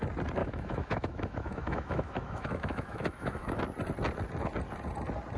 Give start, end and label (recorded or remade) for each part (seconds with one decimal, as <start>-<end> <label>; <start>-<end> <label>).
0.0-0.4 recorded; 0.4-3.6 remade; 3.6-5.4 recorded